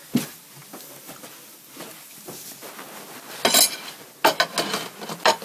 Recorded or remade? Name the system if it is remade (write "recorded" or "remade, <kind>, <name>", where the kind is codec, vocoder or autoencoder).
recorded